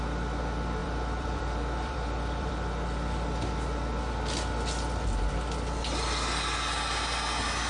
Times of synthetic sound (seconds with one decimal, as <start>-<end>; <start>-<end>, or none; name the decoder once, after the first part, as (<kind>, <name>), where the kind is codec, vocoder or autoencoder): 0.8-2.5 (vocoder, BigVGAN v2)